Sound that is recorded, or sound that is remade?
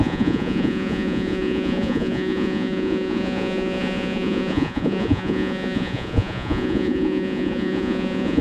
remade